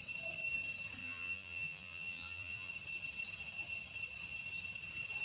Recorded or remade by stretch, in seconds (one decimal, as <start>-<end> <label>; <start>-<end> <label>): 0.0-1.0 recorded; 1.0-2.7 remade; 2.7-5.2 recorded